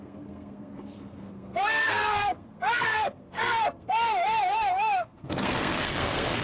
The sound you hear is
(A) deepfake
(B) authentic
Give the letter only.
A